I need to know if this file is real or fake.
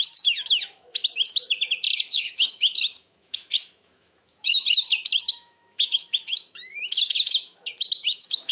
fake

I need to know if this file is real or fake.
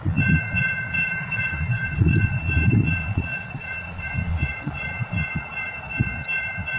fake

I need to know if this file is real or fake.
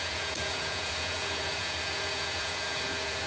fake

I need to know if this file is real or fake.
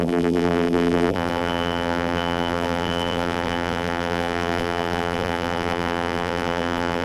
fake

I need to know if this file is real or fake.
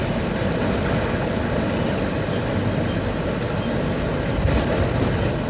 real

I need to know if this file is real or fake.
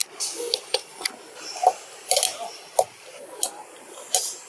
real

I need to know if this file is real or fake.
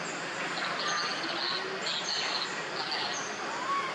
real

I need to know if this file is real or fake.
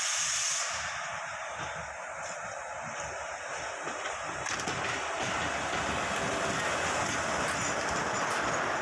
real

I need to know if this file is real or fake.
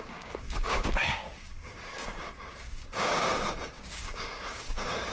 fake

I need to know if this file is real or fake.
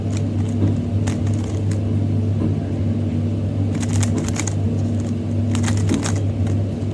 real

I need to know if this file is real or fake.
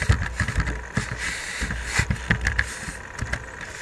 real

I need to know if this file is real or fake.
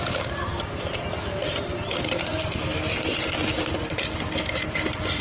real